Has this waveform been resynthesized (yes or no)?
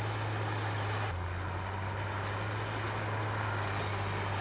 no